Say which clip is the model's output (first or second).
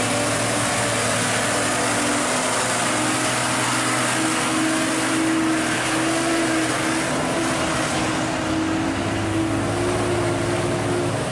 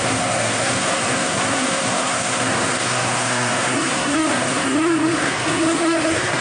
second